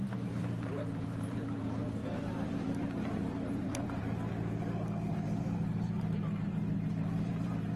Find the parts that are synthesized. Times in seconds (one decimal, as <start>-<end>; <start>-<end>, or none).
0.0-4.0; 5.1-7.8